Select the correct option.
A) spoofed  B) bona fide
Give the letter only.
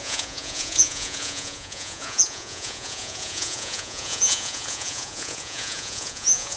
A